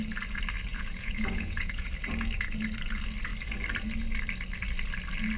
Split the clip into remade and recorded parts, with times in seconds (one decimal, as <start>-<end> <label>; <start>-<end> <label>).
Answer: 0.0-0.7 recorded; 0.7-1.9 remade; 1.9-5.4 recorded

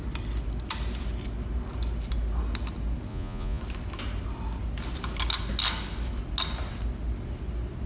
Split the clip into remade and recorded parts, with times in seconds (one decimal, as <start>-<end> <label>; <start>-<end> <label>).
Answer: 0.0-3.1 recorded; 3.1-3.6 remade; 3.6-7.9 recorded

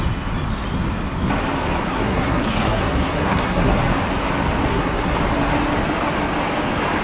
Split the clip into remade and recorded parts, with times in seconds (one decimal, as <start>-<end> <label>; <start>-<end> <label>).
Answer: 0.0-1.8 recorded; 1.8-3.8 remade; 3.8-4.7 recorded; 4.7-5.2 remade; 5.2-7.0 recorded

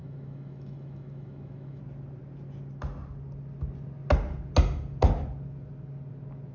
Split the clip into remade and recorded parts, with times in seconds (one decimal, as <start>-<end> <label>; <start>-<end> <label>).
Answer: 0.0-1.8 remade; 1.8-6.5 recorded

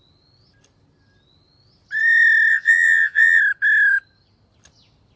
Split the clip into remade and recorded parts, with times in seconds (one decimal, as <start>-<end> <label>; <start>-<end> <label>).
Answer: 0.0-2.5 recorded; 2.5-3.4 remade; 3.4-5.2 recorded

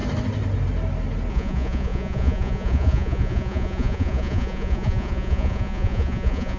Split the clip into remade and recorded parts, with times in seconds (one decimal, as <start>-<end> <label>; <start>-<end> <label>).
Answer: 0.0-1.3 recorded; 1.3-6.6 remade